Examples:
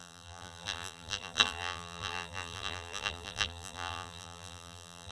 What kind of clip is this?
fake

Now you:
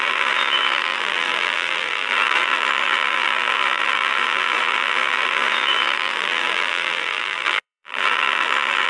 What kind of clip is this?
fake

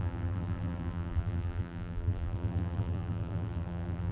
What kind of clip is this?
fake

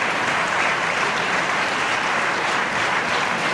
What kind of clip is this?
fake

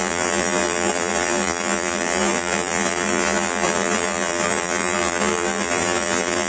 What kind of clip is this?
fake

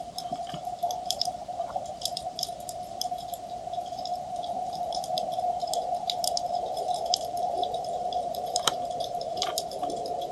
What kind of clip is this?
fake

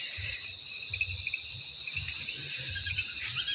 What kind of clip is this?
fake